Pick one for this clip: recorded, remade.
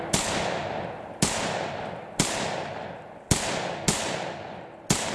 recorded